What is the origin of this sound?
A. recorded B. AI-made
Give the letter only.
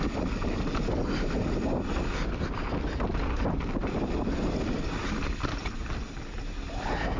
A